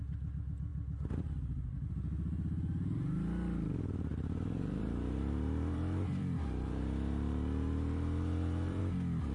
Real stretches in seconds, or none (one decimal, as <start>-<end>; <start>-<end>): 0.0-4.1; 8.8-9.3